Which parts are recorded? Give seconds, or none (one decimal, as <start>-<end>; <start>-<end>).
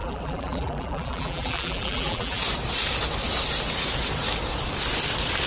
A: 2.4-5.5